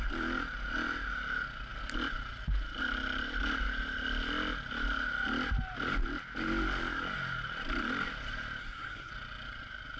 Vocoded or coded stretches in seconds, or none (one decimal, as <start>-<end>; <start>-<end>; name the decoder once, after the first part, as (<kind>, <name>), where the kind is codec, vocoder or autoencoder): 8.6-9.1 (codec, SNAC)

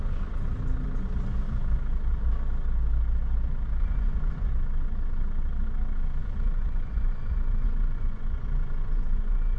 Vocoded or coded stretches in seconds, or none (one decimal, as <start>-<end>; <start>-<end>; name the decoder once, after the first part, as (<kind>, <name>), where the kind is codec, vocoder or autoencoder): 3.8-4.5 (vocoder, Vocos); 6.2-9.6

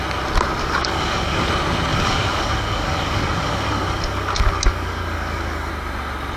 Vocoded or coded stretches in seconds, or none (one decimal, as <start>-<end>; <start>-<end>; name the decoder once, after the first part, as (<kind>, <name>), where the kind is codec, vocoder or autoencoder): 0.6-1.5 (codec, DAC); 1.9-5.7

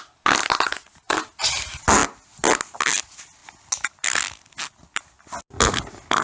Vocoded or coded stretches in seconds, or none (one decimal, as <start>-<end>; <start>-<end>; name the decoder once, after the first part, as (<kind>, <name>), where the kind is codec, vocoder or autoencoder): 0.7-1.3 (vocoder, BigVGAN v2)

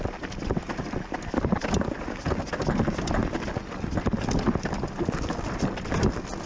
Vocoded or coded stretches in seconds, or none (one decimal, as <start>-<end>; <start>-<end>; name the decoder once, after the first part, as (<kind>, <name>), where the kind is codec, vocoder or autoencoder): none

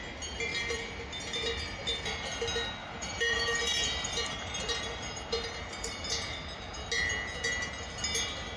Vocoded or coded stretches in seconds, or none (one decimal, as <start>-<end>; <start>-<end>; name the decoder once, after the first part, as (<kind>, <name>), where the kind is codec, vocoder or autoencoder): 2.8-6.0 (vocoder, BigVGAN v2)

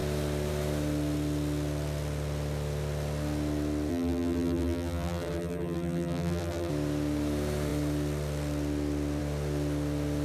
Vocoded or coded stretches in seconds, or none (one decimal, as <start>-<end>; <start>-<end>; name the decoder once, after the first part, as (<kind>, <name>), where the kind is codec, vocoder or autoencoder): 3.9-6.7 (vocoder, BigVGAN v2)